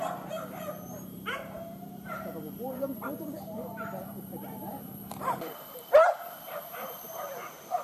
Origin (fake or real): fake